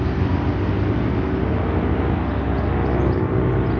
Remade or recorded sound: recorded